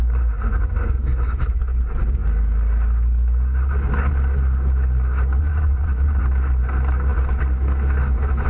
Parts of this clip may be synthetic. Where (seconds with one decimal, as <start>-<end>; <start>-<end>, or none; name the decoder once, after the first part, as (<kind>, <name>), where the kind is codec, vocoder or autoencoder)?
5.4-6.2 (vocoder, Vocos)